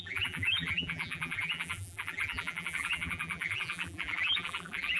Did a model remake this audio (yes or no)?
yes